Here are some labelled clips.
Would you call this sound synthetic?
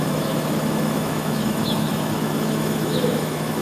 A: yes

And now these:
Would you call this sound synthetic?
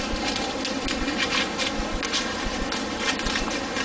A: no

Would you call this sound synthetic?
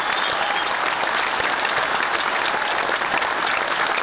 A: no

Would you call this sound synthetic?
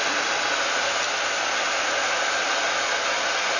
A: no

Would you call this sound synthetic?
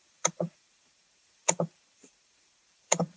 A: yes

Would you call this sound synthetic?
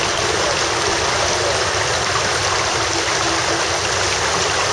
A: no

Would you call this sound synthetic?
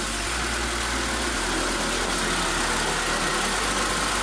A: no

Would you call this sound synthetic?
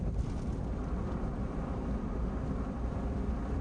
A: no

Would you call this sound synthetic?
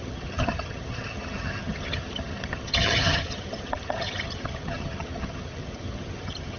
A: yes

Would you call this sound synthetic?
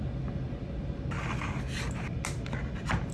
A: no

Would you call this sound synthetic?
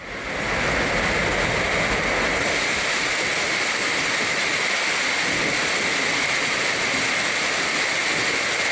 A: no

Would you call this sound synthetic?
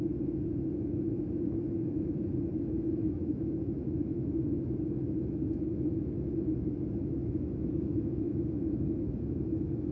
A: yes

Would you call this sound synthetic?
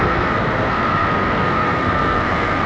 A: yes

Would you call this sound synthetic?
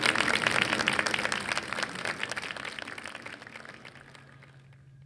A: no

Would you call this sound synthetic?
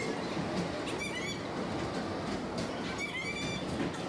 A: no